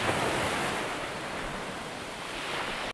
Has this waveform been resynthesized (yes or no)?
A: no